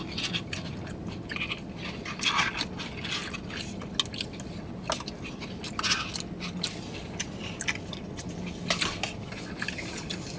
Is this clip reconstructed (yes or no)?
no